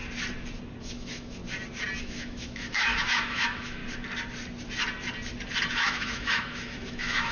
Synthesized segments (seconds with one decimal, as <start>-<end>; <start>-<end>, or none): 0.8-1.4; 2.0-3.8; 5.7-7.3